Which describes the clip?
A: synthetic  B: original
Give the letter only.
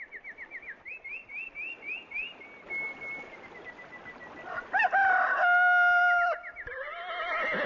B